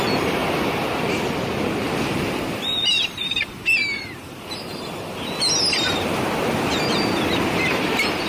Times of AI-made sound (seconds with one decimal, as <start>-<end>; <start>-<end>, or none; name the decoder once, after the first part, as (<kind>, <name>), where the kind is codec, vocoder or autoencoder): 2.9-5.3 (vocoder, BigVGAN v2)